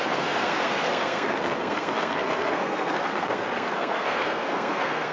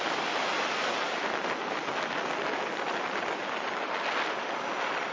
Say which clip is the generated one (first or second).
first